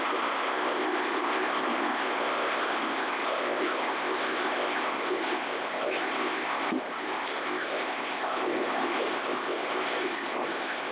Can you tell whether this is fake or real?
fake